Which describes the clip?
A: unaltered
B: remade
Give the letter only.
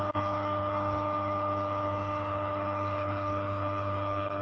B